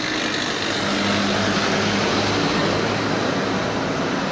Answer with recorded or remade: recorded